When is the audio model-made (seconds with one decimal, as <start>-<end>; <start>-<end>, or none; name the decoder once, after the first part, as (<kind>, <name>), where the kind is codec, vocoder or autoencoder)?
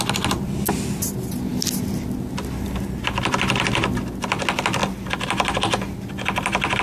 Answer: none